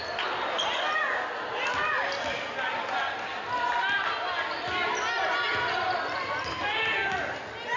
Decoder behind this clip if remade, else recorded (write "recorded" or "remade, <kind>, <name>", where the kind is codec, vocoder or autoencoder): recorded